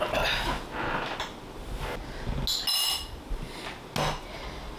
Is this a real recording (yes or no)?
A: yes